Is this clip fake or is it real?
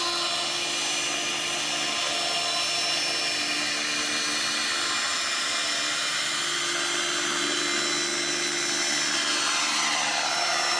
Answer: real